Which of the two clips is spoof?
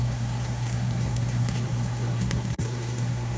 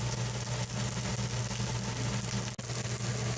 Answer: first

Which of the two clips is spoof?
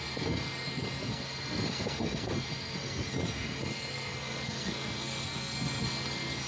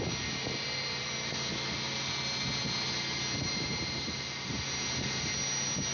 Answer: first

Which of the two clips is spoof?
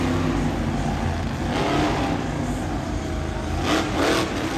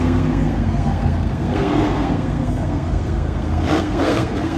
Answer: second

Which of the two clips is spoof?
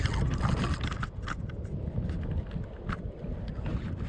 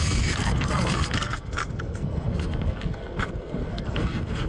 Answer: second